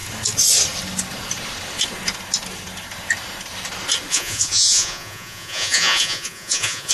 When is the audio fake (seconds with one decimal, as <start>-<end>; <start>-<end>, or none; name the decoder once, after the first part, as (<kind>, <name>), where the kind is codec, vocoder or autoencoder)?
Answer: 4.1-6.9 (vocoder, Vocos)